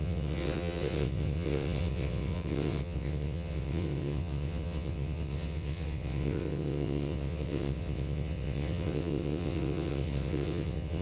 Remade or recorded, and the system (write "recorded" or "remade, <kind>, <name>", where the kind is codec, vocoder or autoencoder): remade, vocoder, WaveNeXt